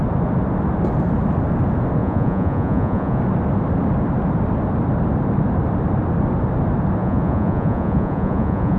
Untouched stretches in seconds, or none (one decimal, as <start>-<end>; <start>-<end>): 0.0-2.0; 3.2-7.0